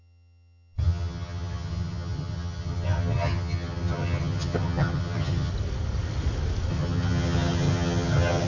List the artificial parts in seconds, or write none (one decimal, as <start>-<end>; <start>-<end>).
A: 0.0-5.5; 6.7-8.5